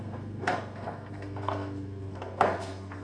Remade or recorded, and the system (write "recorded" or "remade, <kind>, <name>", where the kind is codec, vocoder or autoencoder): remade, codec, SNAC